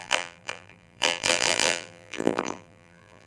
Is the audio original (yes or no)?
no